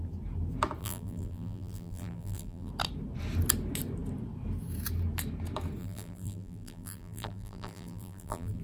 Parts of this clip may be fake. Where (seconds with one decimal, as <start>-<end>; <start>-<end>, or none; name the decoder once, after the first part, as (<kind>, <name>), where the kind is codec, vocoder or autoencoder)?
0.8-2.7 (vocoder, BigVGAN v2); 5.8-8.6